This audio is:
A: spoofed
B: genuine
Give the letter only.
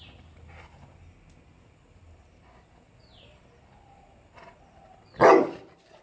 B